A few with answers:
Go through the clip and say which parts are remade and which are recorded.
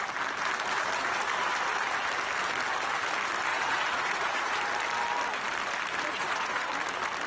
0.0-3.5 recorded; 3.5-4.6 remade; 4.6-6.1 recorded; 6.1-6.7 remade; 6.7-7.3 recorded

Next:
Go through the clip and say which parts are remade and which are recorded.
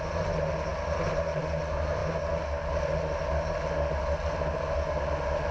0.0-5.5 recorded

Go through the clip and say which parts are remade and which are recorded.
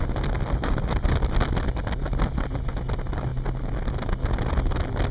0.0-5.1 recorded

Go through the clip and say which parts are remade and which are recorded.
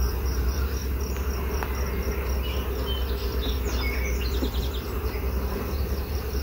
0.0-0.8 remade; 0.8-4.6 recorded; 4.6-6.4 remade